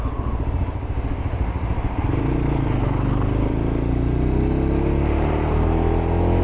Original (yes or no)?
yes